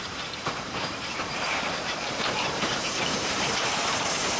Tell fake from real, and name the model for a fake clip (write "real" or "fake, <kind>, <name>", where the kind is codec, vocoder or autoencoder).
fake, vocoder, BigVGAN v2